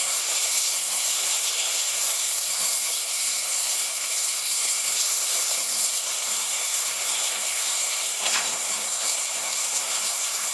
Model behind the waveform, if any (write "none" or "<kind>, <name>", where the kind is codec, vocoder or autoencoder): codec, SNAC